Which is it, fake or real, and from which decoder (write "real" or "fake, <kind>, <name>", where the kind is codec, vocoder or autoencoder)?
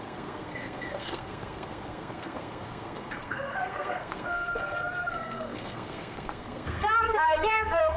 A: fake, codec, SNAC